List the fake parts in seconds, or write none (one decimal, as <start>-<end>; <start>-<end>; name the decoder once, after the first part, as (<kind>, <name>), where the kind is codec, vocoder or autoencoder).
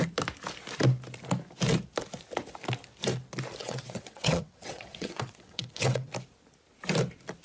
3.6-6.1 (vocoder, WaveNeXt)